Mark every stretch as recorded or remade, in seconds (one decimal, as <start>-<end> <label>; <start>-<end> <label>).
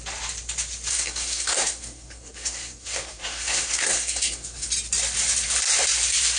0.0-0.9 recorded; 0.9-4.7 remade; 4.7-6.4 recorded